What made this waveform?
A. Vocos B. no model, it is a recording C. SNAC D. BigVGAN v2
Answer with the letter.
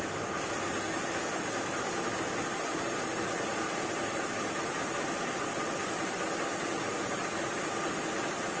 B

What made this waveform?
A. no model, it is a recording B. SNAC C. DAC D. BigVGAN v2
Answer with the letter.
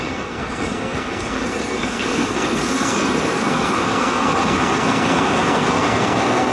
B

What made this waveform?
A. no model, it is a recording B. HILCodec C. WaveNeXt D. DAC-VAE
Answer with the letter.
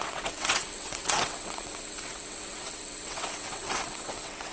C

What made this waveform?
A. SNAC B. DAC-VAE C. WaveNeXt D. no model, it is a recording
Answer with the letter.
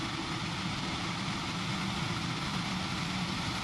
D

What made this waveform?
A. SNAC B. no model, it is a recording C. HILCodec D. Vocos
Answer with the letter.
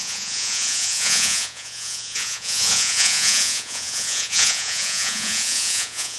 D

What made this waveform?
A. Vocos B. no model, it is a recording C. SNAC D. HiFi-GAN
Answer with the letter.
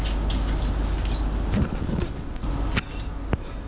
B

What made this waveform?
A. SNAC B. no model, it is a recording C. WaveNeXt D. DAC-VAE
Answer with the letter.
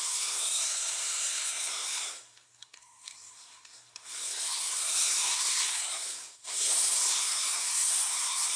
A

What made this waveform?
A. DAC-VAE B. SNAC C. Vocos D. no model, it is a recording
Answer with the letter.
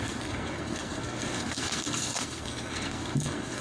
B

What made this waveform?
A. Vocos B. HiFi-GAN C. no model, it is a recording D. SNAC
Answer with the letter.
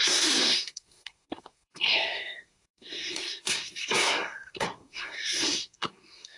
D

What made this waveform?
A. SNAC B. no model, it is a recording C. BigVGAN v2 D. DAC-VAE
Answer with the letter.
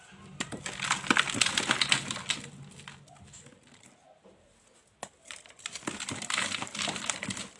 B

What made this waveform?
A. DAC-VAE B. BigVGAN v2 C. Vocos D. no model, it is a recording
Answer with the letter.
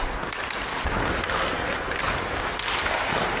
D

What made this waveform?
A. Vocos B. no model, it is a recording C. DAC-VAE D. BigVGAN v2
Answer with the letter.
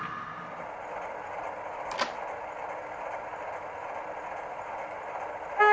B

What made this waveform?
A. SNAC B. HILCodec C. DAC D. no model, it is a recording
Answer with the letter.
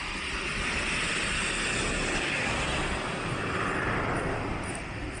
D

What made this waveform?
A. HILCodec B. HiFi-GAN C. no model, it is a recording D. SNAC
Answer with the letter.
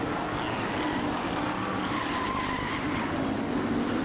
C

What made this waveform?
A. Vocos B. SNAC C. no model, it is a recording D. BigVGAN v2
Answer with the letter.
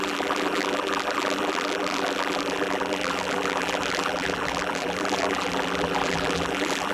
D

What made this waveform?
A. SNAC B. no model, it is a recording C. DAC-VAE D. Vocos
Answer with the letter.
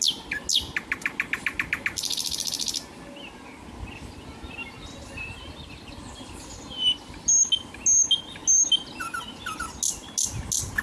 B